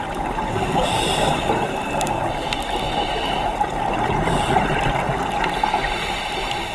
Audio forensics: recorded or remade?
recorded